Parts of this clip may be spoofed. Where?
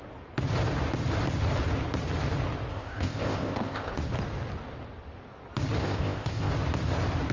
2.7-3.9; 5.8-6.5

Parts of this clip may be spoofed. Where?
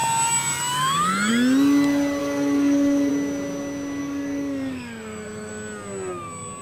2.2-3.1; 4.0-5.5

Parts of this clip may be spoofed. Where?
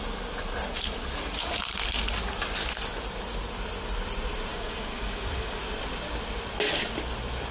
4.5-5.6